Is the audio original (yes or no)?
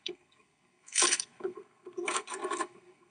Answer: no